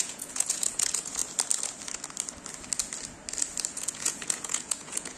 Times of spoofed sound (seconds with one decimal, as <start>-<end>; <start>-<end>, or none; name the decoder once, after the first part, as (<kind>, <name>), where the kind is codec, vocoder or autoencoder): 0.0-1.2 (vocoder, Vocos); 3.7-5.2